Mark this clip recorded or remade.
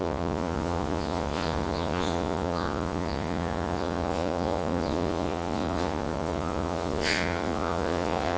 remade